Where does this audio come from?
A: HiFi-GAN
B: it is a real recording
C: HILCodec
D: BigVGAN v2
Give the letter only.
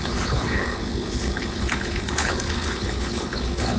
C